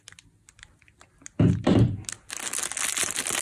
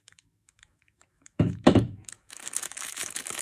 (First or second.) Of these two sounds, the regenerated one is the second